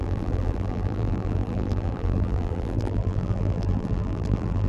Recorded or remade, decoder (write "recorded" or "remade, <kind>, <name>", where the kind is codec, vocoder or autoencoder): remade, vocoder, BigVGAN v2